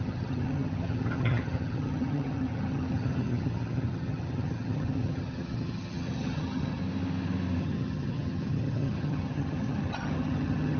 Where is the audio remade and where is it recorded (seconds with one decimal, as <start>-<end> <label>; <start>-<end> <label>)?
0.0-6.8 remade; 6.8-7.6 recorded; 7.6-10.8 remade